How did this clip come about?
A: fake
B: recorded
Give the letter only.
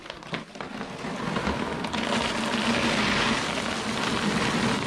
B